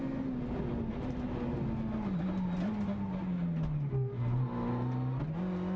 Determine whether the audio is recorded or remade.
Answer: recorded